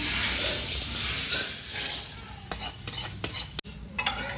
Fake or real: real